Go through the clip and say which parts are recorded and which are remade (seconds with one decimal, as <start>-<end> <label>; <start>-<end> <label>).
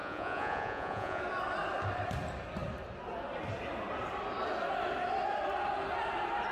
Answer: 0.0-1.2 remade; 1.2-6.5 recorded